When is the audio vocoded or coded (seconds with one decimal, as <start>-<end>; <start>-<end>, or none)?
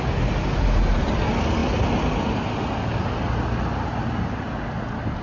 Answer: none